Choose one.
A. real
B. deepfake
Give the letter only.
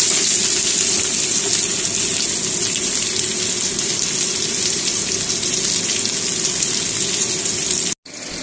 A